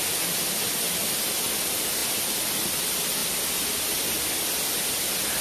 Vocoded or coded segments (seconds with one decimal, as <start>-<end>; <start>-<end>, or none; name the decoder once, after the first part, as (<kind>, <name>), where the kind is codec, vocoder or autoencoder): none